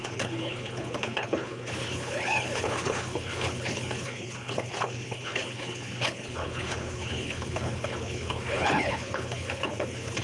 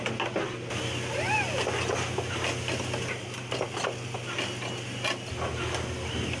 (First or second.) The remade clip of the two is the first